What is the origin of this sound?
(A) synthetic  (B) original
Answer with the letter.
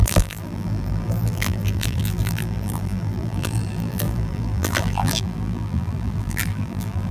A